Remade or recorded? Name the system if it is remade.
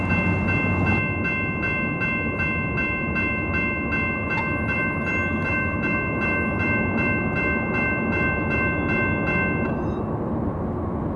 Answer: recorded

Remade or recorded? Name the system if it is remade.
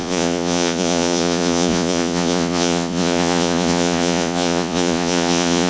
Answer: remade, vocoder, Vocos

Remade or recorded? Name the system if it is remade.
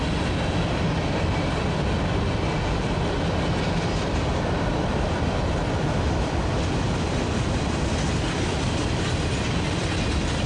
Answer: recorded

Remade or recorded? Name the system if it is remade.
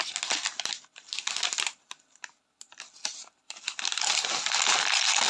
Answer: recorded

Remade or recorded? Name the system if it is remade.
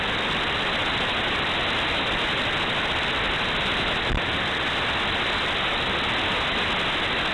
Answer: recorded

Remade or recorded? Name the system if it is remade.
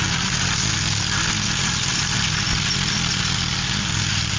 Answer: recorded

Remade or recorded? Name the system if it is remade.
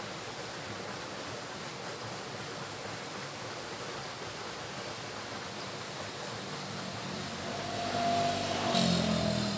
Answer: recorded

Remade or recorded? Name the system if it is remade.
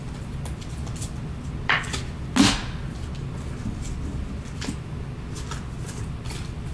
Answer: recorded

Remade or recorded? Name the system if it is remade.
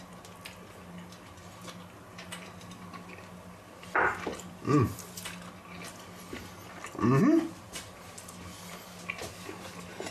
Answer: recorded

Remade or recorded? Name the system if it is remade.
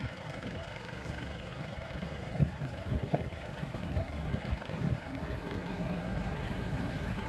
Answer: remade, codec, SNAC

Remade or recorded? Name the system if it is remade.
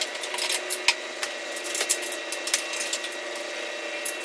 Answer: recorded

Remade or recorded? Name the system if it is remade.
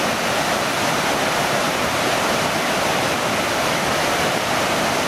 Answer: recorded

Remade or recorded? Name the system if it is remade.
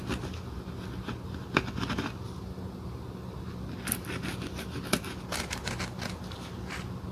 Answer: recorded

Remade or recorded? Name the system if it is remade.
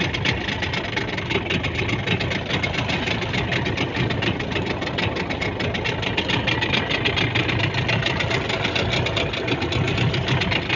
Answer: recorded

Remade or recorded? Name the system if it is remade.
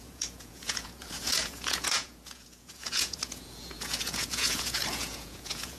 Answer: remade, vocoder, Vocos